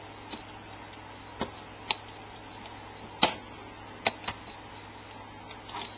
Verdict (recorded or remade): recorded